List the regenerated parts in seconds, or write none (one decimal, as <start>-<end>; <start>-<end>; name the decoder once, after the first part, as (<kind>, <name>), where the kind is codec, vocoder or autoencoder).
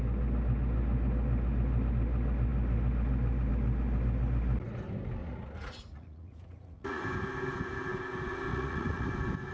5.2-7.0 (vocoder, Vocos); 8.5-9.1